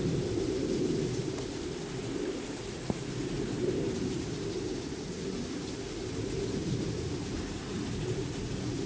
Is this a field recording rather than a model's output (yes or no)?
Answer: yes